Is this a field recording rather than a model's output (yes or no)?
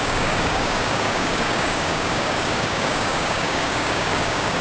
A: no